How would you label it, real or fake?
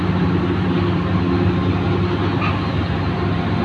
real